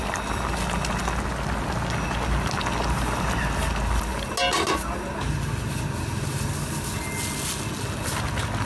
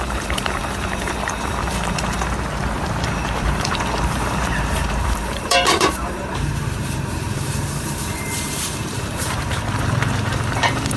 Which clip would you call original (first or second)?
first